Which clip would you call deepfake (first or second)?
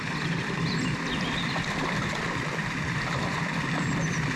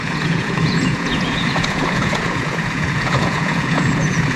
second